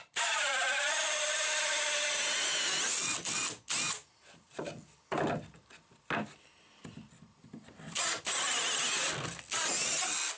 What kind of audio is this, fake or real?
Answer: real